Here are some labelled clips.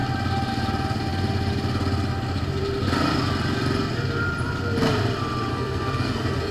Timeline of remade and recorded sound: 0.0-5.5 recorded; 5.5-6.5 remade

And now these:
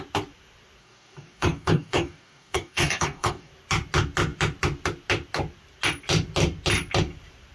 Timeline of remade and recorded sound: 0.0-0.8 recorded; 0.8-3.5 remade; 3.5-7.5 recorded

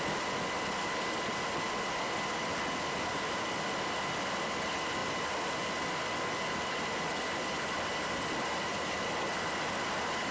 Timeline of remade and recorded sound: 0.0-10.3 recorded